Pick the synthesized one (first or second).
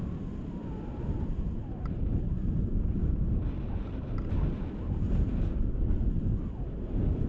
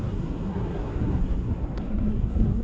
second